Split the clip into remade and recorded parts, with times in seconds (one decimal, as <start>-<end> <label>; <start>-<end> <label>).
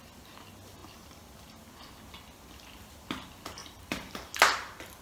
0.0-3.6 recorded; 3.6-4.3 remade; 4.3-5.0 recorded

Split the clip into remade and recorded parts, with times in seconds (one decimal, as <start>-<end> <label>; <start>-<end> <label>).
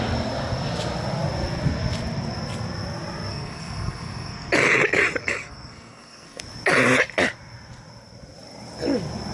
0.0-3.3 recorded; 3.3-4.5 remade; 4.5-5.2 recorded; 5.2-6.4 remade; 6.4-9.3 recorded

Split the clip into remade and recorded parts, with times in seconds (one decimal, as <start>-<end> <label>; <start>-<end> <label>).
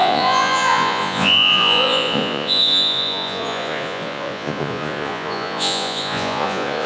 0.0-6.9 remade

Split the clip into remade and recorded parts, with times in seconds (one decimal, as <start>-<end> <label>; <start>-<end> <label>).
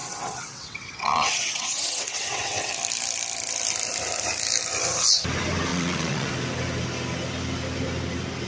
0.0-2.7 remade; 2.7-5.7 recorded; 5.7-6.3 remade; 6.3-8.5 recorded